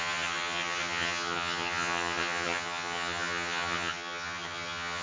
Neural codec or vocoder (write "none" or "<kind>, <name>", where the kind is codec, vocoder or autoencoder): vocoder, HiFi-GAN